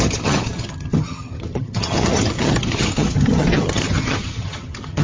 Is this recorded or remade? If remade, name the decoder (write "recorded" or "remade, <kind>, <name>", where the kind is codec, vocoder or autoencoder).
remade, vocoder, HiFi-GAN